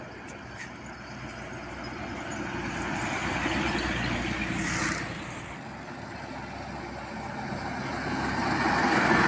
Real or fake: real